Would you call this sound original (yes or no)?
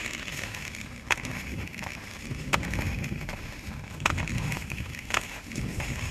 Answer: no